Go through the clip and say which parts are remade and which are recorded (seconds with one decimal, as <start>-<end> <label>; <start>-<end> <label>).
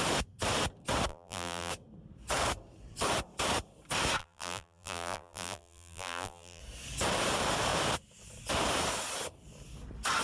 0.0-1.1 recorded; 1.1-1.7 remade; 1.7-4.2 recorded; 4.2-6.6 remade; 6.6-10.2 recorded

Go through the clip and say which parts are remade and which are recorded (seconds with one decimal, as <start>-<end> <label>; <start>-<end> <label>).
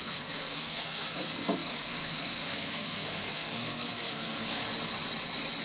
0.0-4.6 remade; 4.6-5.6 recorded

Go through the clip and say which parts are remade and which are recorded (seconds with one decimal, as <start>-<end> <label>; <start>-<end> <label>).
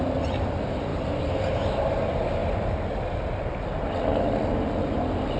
0.0-2.4 recorded; 2.4-4.2 remade; 4.2-5.4 recorded